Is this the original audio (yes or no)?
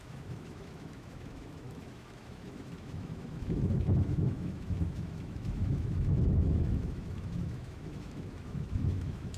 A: no